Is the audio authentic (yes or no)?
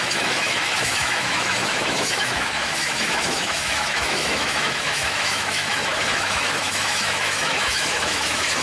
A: no